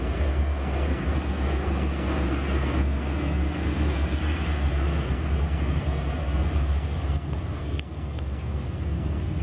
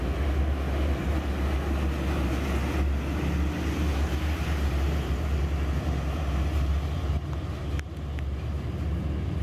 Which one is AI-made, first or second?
first